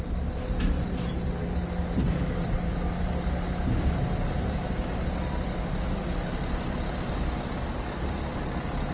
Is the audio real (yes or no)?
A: yes